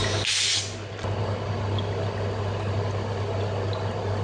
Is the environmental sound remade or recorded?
recorded